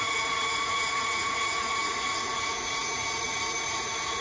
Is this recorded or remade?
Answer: remade